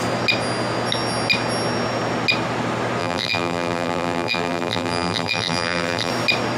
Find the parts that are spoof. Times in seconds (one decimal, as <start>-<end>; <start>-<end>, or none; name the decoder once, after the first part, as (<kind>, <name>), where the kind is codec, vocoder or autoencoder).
3.0-6.1 (vocoder, BigVGAN v2)